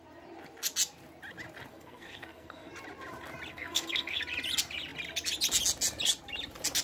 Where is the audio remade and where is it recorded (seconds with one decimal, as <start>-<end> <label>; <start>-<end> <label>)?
0.0-1.7 recorded; 1.7-2.7 remade; 2.7-3.5 recorded; 3.5-4.2 remade; 4.2-6.8 recorded